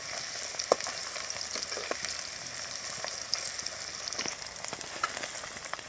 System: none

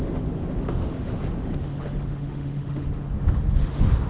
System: autoencoder, DAC-VAE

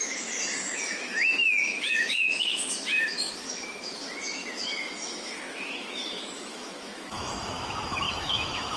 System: autoencoder, DAC-VAE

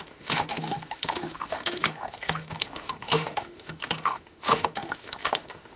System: autoencoder, DAC-VAE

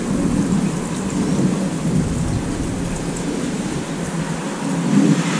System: none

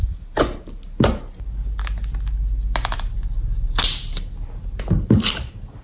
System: none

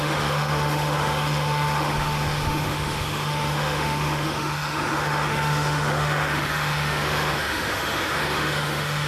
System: autoencoder, DAC-VAE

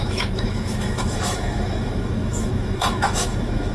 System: autoencoder, DAC-VAE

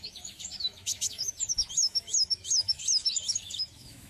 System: autoencoder, DAC-VAE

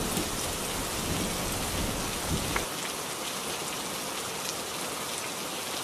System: none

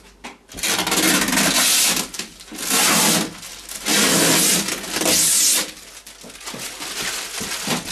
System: none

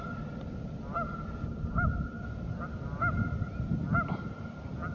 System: none